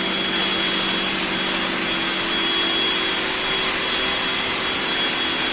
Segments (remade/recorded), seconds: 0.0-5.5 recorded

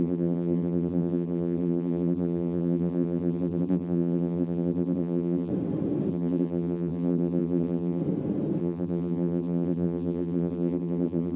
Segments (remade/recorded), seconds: 0.0-5.5 remade; 5.5-6.1 recorded; 6.1-8.0 remade; 8.0-8.6 recorded; 8.6-11.4 remade

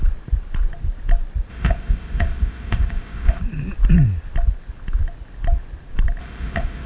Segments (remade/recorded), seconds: 0.0-1.5 recorded; 1.5-3.4 remade; 3.4-6.2 recorded; 6.2-6.9 remade

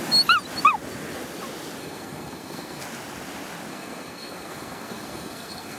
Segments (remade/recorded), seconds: 0.0-1.8 recorded; 1.8-2.8 remade; 2.8-3.7 recorded; 3.7-5.8 remade